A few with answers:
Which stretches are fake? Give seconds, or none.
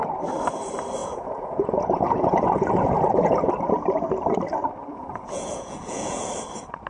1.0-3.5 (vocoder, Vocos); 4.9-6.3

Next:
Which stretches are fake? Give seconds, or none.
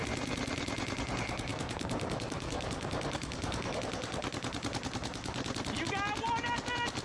1.5-3.8 (codec, DAC)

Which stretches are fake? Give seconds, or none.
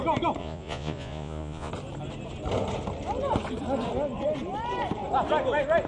0.4-1.7 (vocoder, Vocos)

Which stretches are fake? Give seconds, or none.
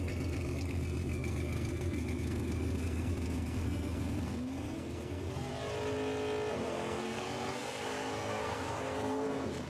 0.0-5.5 (codec, SNAC); 6.5-9.7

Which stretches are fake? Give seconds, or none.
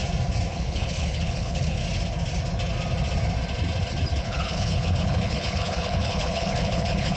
0.5-1.8 (codec, HILCodec); 4.2-7.2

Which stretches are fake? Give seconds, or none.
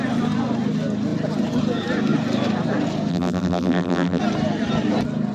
3.1-4.2 (vocoder, BigVGAN v2)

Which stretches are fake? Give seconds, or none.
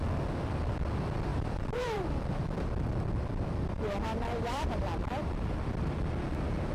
1.3-2.2 (vocoder, BigVGAN v2); 4.3-4.9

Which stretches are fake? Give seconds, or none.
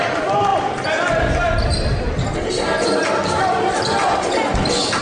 none